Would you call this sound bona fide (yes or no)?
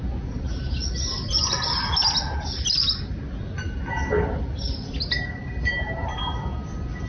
yes